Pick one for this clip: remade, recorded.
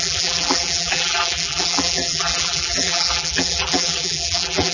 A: remade